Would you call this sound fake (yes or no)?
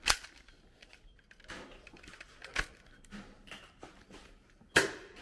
no